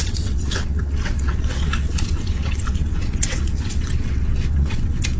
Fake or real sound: fake